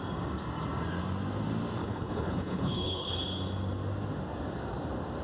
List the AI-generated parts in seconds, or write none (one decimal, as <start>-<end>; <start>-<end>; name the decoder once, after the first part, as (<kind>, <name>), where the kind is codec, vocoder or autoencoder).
1.8-3.1 (codec, HILCodec)